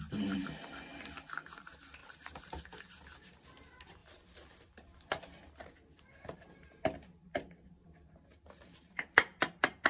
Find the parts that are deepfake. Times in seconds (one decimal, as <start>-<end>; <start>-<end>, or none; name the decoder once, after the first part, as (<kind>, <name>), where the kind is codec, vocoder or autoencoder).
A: 2.0-2.6 (vocoder, BigVGAN v2); 8.8-9.9